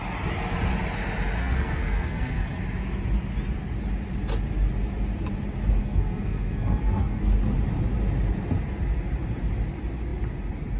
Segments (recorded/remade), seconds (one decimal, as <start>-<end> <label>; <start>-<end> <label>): 0.0-1.4 recorded; 1.4-2.6 remade; 2.6-5.8 recorded; 5.8-7.2 remade; 7.2-10.8 recorded